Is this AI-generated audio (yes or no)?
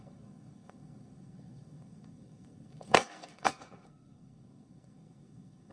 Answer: yes